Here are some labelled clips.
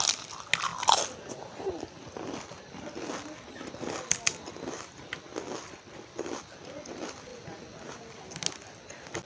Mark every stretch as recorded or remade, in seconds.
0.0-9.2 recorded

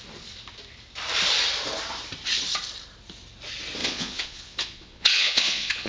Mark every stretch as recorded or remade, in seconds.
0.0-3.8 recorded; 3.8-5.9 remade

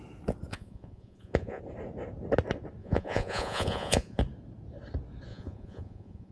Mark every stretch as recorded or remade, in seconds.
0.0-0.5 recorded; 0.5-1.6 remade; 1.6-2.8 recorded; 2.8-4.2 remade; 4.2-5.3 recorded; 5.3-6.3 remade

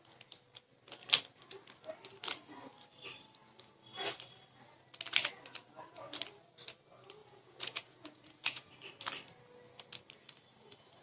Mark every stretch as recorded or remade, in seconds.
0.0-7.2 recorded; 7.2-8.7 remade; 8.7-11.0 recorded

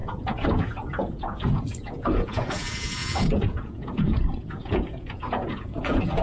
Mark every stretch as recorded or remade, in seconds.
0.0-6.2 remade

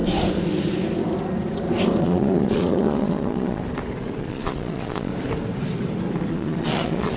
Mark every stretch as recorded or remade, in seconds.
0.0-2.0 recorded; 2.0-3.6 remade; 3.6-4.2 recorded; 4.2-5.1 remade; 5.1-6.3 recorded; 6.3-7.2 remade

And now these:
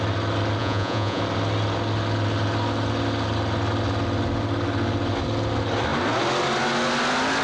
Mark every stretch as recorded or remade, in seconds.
0.0-0.6 recorded; 0.6-1.2 remade; 1.2-7.4 recorded